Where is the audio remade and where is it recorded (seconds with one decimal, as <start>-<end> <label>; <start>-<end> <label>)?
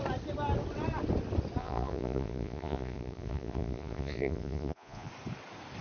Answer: 0.0-1.6 recorded; 1.6-5.1 remade; 5.1-5.8 recorded